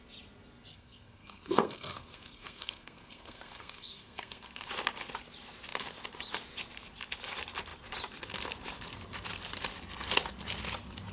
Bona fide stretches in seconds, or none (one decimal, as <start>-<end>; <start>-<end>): 0.0-0.7; 4.7-11.1